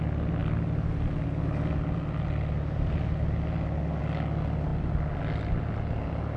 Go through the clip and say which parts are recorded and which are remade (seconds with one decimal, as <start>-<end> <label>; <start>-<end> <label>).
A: 0.0-6.4 recorded